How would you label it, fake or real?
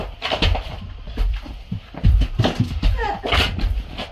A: real